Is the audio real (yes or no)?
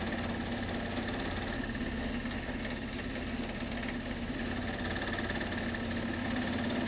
yes